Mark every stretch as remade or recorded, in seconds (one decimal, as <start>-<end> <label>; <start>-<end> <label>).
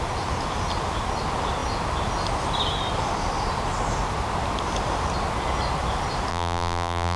0.0-6.3 recorded; 6.3-7.2 remade